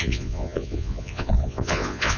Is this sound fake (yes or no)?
yes